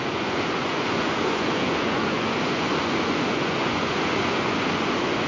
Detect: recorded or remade remade